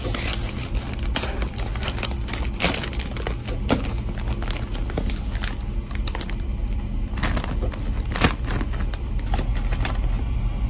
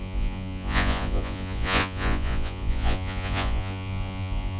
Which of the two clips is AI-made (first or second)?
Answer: second